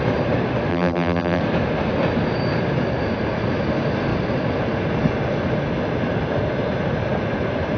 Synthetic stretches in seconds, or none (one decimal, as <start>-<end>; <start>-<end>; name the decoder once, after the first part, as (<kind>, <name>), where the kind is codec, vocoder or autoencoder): 0.7-1.4 (vocoder, BigVGAN v2)